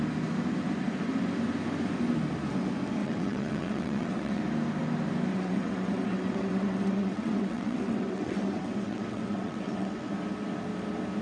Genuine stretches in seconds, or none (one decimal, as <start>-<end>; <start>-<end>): 0.0-3.0; 4.4-5.3; 10.1-11.2